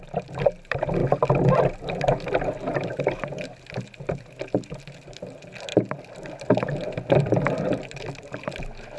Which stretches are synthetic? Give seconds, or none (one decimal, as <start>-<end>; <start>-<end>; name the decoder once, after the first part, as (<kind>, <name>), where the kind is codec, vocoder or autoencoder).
none